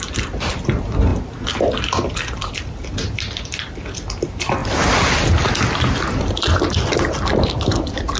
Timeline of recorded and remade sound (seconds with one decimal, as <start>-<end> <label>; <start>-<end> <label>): 0.0-8.2 recorded